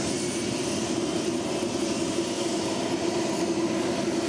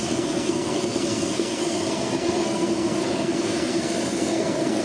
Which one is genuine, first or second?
first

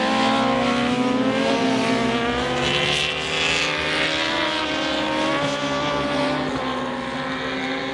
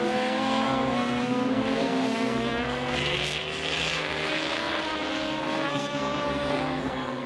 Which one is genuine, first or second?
first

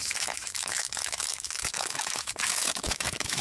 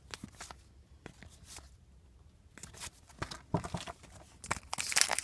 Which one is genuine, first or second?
second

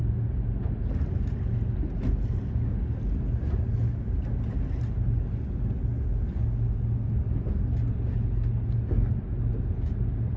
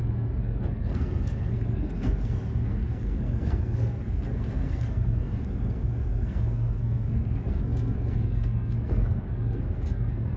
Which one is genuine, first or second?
first